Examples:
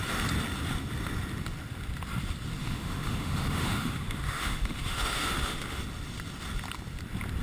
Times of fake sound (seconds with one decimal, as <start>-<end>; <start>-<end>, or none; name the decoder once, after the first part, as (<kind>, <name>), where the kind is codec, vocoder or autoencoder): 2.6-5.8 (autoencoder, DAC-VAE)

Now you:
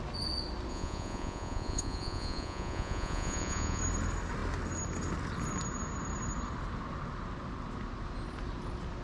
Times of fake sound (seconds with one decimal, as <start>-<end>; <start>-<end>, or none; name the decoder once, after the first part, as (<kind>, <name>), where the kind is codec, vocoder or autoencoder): 0.7-3.8 (vocoder, Vocos)

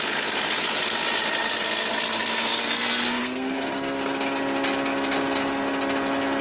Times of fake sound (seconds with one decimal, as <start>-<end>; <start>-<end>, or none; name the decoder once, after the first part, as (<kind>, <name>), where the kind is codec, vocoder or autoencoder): 3.2-4.0 (codec, SNAC)

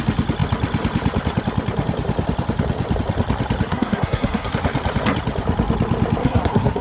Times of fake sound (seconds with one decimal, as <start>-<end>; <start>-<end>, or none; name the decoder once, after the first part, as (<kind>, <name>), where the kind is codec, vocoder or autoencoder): 3.7-4.5 (codec, SNAC); 6.2-6.8

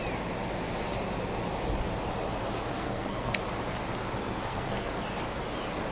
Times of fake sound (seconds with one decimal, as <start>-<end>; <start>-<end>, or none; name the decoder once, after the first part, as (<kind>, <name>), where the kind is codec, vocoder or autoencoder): 2.7-3.4 (codec, SNAC); 4.2-4.9

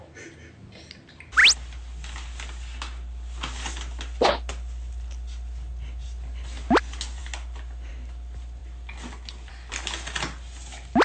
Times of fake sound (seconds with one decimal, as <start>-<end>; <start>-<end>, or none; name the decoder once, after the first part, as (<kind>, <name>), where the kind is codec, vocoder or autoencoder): none

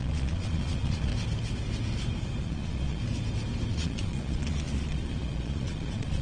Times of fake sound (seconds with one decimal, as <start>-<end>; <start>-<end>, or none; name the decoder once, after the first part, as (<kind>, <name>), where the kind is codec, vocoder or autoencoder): 0.0-1.1 (vocoder, Vocos); 2.4-3.0; 3.7-6.2

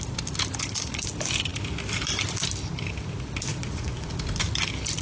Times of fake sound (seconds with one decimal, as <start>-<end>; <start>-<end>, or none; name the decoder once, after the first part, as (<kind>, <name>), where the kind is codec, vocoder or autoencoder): 3.5-4.1 (vocoder, Vocos)